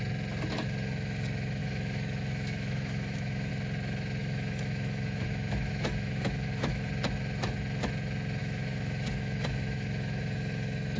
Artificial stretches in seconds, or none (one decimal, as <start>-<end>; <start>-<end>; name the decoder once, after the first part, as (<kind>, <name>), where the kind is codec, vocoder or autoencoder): 1.6-3.5 (autoencoder, DAC-VAE); 4.2-6.9; 8.4-11.0